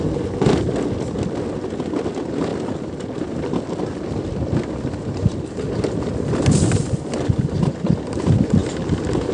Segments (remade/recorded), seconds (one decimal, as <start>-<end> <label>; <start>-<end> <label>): 0.0-2.5 recorded; 2.5-7.6 remade; 7.6-9.3 recorded